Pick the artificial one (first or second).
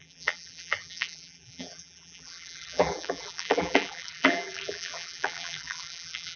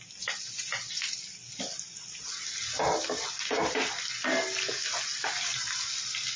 first